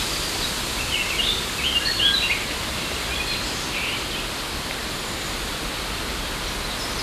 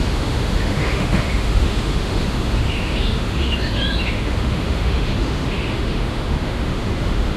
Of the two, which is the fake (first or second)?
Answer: second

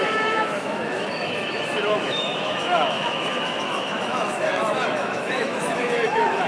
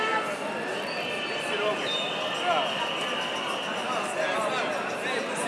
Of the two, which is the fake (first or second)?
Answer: first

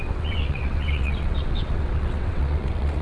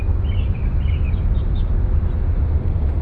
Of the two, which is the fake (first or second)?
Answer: first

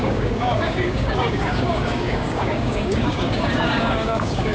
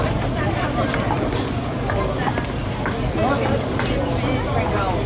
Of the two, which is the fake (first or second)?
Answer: first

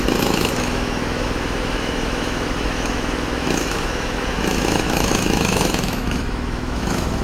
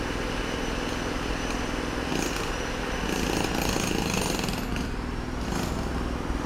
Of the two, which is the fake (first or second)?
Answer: first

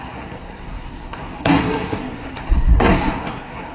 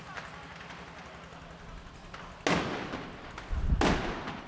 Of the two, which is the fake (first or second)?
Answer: first